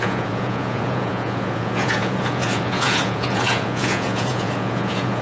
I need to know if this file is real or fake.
fake